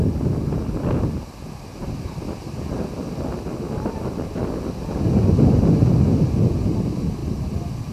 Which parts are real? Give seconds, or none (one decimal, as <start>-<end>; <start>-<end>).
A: 0.0-7.9

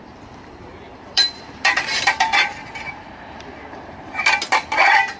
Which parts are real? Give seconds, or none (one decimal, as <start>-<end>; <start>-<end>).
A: 0.0-0.9; 4.0-5.2

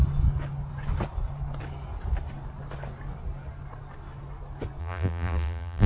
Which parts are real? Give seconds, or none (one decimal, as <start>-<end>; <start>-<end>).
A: 0.0-4.8

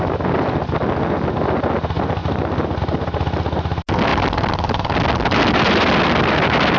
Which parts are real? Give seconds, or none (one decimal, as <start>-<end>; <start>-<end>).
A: 0.0-6.8

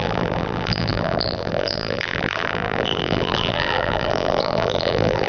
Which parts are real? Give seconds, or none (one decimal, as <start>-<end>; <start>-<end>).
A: none